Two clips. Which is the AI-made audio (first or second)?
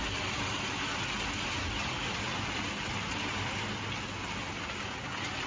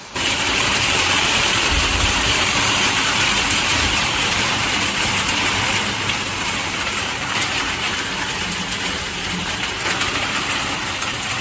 second